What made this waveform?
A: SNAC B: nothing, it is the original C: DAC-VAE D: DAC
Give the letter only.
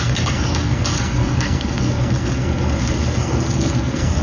A